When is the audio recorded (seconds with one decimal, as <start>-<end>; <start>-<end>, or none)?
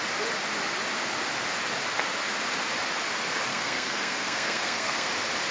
0.0-3.5; 5.1-5.5